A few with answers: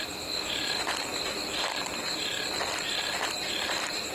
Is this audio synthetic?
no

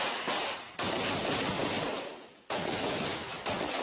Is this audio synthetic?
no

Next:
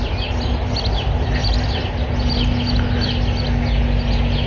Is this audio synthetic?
no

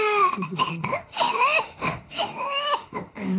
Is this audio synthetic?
yes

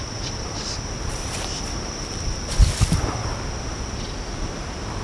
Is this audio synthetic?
no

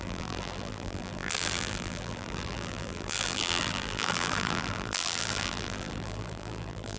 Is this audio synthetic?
yes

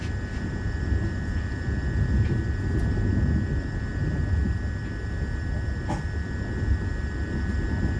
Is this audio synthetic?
no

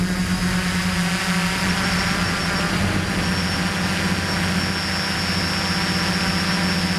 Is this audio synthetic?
no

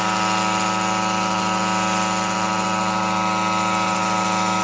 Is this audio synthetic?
no